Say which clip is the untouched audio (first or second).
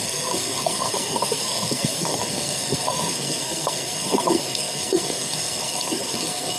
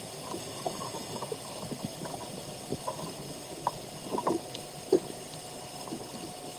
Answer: second